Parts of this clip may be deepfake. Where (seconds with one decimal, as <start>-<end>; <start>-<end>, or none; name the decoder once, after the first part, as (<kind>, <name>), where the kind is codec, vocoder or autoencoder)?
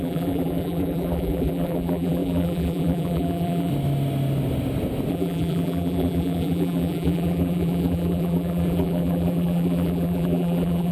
0.0-3.7 (vocoder, BigVGAN v2); 5.1-10.9